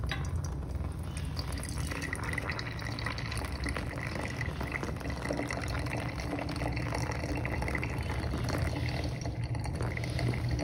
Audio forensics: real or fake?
real